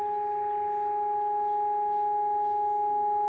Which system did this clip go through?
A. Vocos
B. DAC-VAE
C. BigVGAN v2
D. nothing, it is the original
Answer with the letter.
D